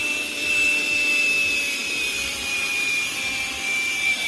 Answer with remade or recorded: remade